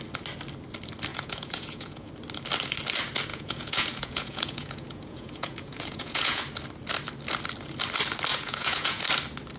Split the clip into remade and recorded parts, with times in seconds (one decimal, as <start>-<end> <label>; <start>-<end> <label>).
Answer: 0.0-1.1 recorded; 1.1-2.1 remade; 2.1-3.3 recorded; 3.3-6.4 remade; 6.4-8.3 recorded; 8.3-9.0 remade; 9.0-9.6 recorded